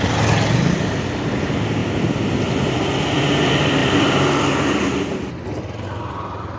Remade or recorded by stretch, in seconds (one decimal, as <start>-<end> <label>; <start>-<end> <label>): 0.0-6.6 recorded